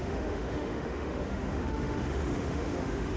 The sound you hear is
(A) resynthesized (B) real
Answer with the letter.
A